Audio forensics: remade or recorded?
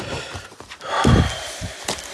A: recorded